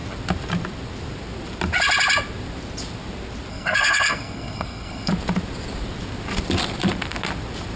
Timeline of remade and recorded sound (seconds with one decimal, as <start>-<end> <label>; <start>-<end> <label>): 0.0-3.5 recorded; 3.5-5.1 remade; 5.1-7.8 recorded